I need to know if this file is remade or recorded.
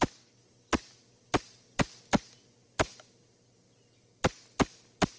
recorded